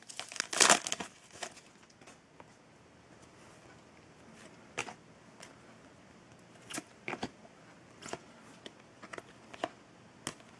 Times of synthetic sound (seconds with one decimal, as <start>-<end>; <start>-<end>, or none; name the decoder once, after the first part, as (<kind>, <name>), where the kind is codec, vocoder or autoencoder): 1.0-1.5 (vocoder, BigVGAN v2); 6.7-7.4